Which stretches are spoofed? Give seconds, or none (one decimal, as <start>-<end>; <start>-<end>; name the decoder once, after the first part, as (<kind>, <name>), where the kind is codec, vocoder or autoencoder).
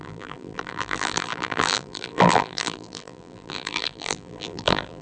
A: 0.0-5.0 (vocoder, BigVGAN v2)